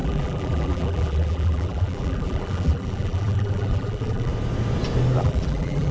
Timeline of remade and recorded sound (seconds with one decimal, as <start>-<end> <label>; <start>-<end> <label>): 0.0-4.3 remade; 4.3-5.2 recorded; 5.2-5.9 remade